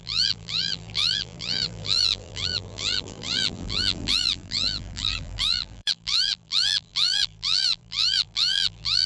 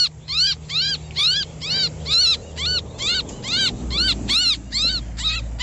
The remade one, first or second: first